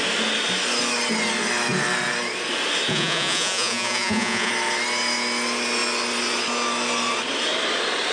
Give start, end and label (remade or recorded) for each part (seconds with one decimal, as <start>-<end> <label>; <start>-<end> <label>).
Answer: 0.0-2.9 recorded; 2.9-4.5 remade; 4.5-8.1 recorded